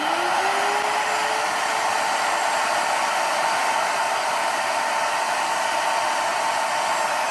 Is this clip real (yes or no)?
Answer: yes